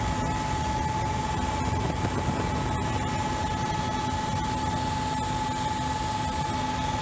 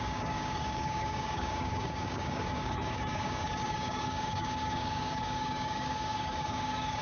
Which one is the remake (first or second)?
second